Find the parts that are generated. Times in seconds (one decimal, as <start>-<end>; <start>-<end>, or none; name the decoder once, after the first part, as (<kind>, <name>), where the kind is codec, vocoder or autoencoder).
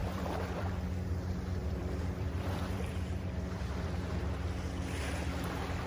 0.0-0.7 (vocoder, BigVGAN v2); 1.6-4.3